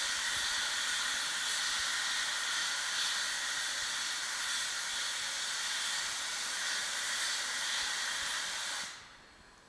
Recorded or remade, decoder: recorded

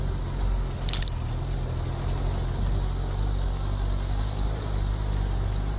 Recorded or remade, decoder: recorded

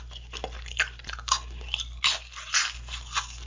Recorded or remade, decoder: recorded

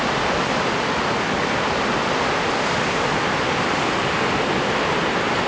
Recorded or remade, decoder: recorded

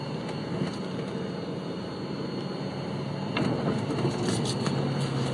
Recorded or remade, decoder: recorded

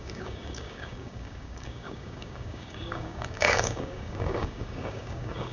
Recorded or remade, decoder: remade, codec, DAC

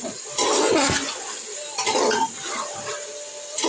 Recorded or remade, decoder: recorded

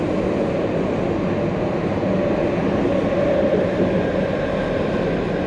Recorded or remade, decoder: recorded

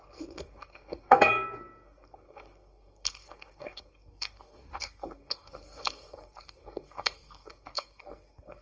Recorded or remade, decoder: remade, codec, SNAC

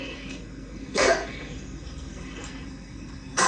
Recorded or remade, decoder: remade, codec, SNAC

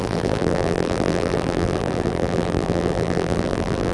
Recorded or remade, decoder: remade, vocoder, BigVGAN v2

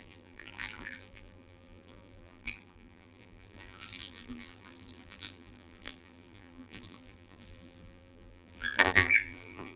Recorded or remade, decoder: remade, vocoder, BigVGAN v2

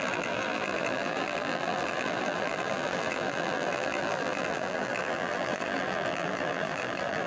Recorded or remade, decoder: remade, vocoder, BigVGAN v2